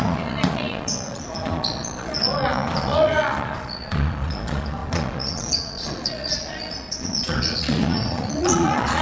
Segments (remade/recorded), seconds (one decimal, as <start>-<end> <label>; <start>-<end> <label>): 0.0-9.0 remade